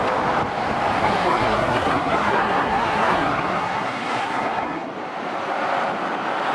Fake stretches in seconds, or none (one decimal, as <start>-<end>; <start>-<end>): 1.0-4.9